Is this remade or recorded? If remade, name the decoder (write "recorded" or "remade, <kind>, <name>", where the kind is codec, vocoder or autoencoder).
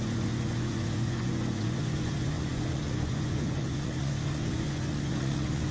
remade, vocoder, Vocos